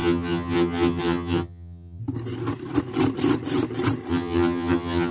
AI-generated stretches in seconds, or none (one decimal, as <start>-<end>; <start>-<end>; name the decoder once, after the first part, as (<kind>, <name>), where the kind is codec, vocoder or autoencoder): 0.0-2.0 (vocoder, HiFi-GAN); 4.1-5.1